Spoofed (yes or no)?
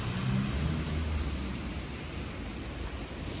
no